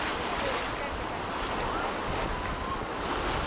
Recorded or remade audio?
recorded